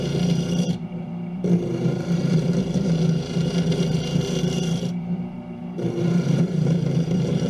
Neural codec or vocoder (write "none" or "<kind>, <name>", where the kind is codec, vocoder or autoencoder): vocoder, BigVGAN v2